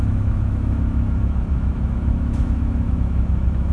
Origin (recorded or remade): remade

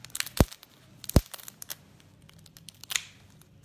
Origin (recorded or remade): recorded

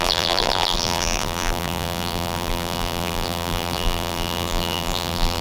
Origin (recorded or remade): remade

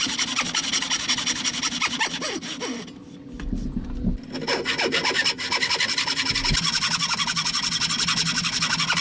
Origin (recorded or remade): recorded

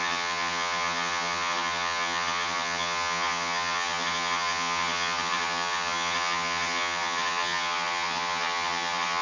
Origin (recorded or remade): remade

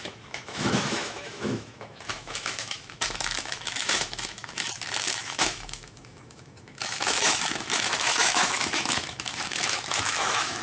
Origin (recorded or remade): remade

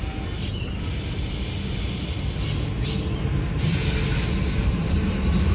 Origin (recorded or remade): recorded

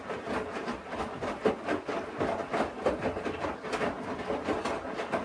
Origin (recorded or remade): recorded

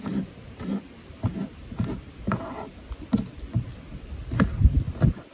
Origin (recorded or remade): recorded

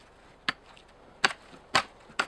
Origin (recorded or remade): recorded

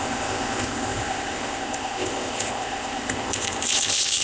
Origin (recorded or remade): remade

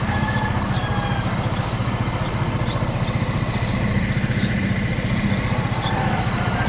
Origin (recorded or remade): recorded